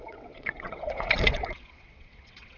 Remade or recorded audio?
remade